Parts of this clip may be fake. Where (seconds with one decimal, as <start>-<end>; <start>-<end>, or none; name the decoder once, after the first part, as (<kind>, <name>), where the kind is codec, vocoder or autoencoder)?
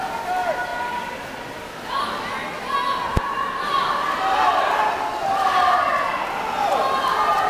none